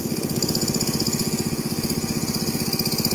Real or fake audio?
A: real